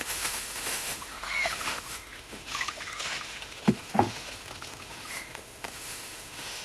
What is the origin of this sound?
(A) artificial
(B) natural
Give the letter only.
A